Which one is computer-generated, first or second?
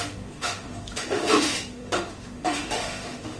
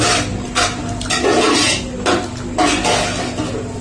first